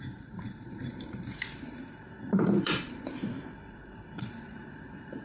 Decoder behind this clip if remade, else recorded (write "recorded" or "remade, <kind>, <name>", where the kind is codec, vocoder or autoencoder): remade, vocoder, BigVGAN v2